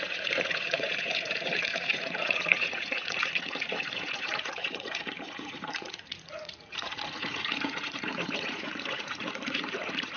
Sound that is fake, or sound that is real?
fake